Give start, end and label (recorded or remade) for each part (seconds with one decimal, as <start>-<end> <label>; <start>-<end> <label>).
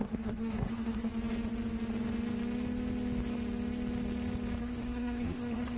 0.0-1.1 remade; 1.1-4.6 recorded; 4.6-5.8 remade